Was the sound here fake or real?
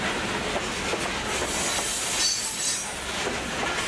real